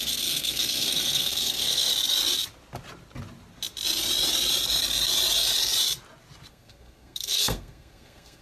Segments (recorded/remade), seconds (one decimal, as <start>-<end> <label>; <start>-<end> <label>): 0.0-1.9 remade; 1.9-6.5 recorded; 6.5-8.4 remade